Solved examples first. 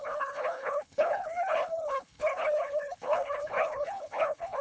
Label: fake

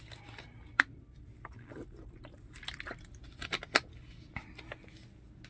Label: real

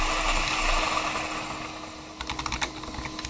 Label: real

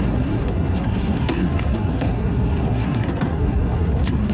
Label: fake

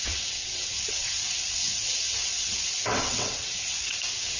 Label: fake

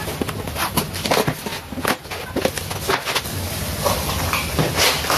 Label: real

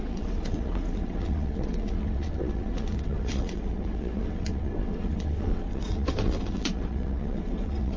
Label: fake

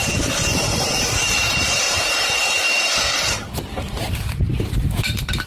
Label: fake